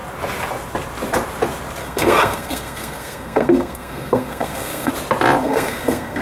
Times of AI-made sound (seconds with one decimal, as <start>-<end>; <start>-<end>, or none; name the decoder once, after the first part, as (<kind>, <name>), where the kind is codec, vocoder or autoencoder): 1.8-4.9 (codec, SNAC); 5.4-6.2